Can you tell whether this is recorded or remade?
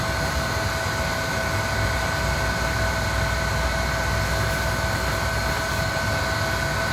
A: recorded